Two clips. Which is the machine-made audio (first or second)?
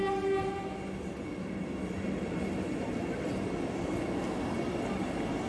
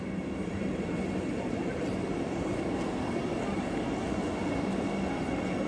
second